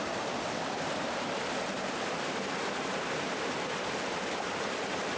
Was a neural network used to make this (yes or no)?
no